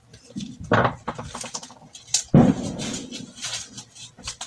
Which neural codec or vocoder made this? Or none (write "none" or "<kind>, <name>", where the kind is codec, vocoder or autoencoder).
none